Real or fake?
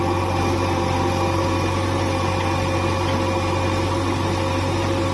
real